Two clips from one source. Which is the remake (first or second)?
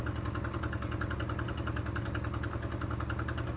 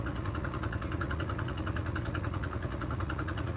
second